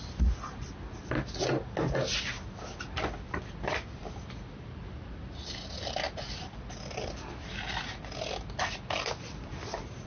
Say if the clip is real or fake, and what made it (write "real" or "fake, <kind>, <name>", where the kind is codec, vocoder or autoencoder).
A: real